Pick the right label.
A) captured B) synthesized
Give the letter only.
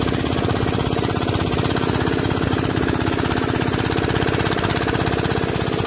A